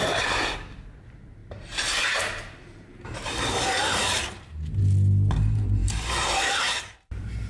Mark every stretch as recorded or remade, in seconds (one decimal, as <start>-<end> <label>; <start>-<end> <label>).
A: 0.0-1.4 recorded; 1.4-4.3 remade; 4.3-5.8 recorded; 5.8-7.5 remade

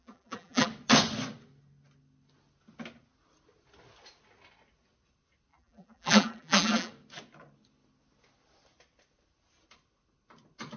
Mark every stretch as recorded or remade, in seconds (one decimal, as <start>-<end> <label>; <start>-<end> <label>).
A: 0.0-0.7 remade; 0.7-5.5 recorded; 5.5-6.9 remade; 6.9-10.8 recorded